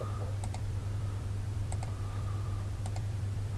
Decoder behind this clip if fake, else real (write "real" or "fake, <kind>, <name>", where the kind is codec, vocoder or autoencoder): fake, vocoder, BigVGAN v2